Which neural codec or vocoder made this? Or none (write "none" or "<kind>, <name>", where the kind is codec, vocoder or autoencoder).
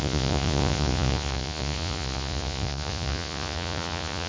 vocoder, Vocos